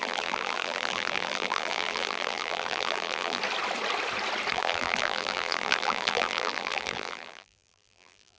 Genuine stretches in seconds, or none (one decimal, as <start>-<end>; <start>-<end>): 3.4-4.5